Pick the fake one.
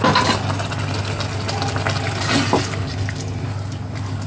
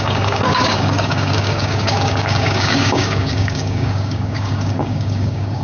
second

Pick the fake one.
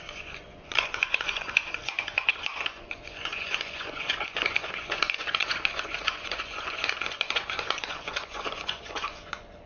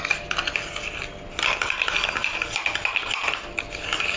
first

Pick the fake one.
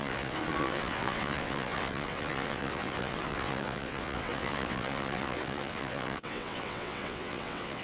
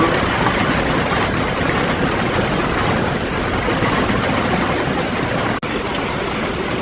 first